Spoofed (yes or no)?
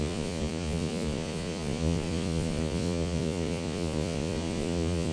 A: yes